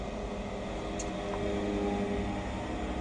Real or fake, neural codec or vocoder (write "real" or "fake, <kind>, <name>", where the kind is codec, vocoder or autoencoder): real